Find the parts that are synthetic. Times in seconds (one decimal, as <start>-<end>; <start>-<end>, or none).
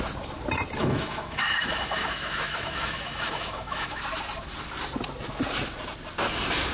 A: 0.8-4.0